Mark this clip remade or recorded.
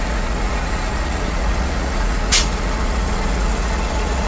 remade